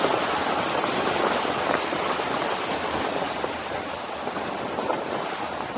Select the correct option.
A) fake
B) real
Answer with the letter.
A